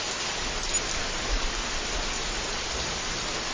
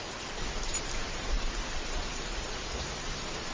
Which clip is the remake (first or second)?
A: second